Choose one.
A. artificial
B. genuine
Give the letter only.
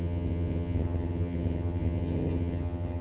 A